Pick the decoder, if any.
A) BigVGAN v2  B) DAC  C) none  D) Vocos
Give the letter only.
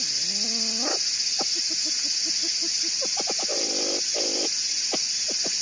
C